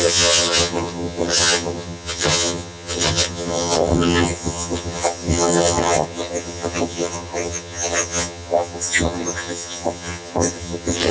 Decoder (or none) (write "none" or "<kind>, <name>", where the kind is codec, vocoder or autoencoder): vocoder, HiFi-GAN